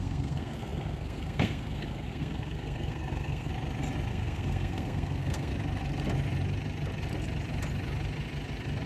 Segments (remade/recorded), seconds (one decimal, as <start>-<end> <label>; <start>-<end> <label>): 0.0-3.5 remade; 3.5-4.1 recorded; 4.1-5.5 remade; 5.5-8.9 recorded